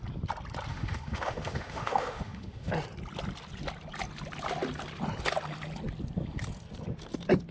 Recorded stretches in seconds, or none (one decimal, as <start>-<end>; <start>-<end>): 0.0-0.7; 2.7-7.5